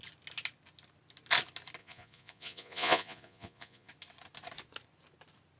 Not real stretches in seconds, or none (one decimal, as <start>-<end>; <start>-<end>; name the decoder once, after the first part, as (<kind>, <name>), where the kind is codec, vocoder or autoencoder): 1.8-3.9 (vocoder, Vocos)